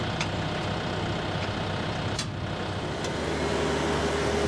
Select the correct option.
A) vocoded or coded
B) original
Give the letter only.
B